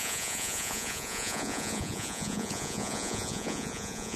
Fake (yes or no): yes